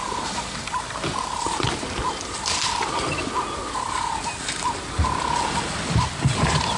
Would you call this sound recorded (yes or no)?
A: yes